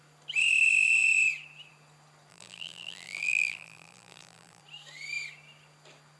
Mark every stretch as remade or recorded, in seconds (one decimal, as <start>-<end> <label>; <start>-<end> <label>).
0.0-2.3 recorded; 2.3-4.6 remade; 4.6-6.2 recorded